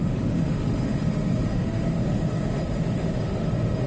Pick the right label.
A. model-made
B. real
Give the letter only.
A